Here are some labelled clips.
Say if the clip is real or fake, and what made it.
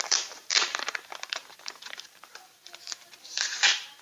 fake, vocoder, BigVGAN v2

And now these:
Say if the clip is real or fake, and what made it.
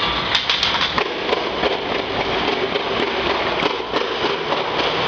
real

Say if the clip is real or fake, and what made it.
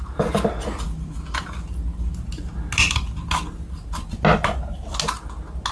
real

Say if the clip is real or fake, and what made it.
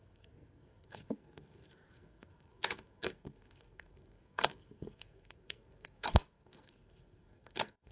fake, codec, SNAC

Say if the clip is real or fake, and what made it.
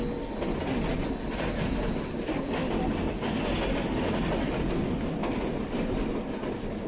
real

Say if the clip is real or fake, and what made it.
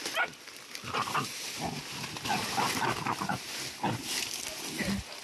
real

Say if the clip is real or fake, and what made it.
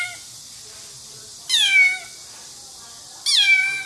real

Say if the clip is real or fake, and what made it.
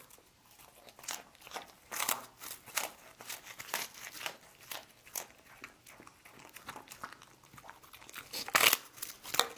real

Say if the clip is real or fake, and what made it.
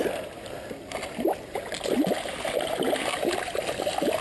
real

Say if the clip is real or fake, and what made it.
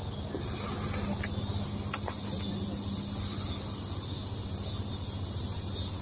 real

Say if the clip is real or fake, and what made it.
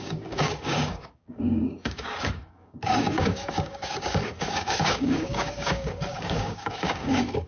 fake, codec, DAC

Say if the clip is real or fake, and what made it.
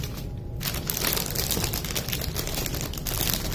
real